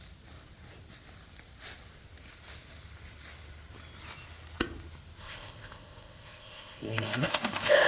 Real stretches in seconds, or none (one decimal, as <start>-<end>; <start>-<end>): 0.0-5.2